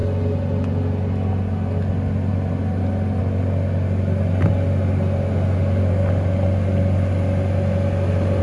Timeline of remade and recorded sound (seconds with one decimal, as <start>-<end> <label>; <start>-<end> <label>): 0.0-8.4 recorded